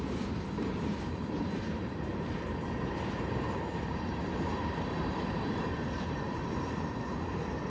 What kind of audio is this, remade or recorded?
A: remade